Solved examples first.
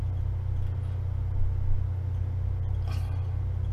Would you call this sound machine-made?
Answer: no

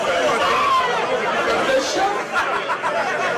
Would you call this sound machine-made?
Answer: no